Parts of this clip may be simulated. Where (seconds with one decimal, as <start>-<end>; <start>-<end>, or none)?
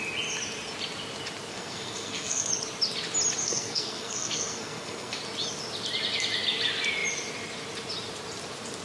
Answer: 1.5-2.5; 3.4-5.2